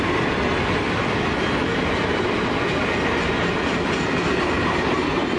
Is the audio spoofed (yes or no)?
no